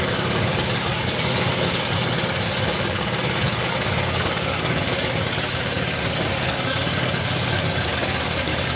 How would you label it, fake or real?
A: fake